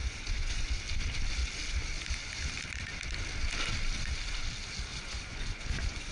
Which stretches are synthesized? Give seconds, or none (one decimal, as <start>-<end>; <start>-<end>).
0.0-0.6; 4.9-6.1